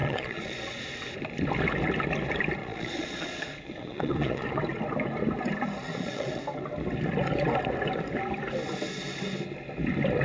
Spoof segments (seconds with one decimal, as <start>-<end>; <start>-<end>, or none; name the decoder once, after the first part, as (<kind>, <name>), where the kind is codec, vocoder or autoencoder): 0.0-0.8 (vocoder, Vocos); 2.6-4.6; 5.9-6.4